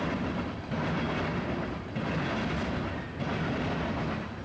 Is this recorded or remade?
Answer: recorded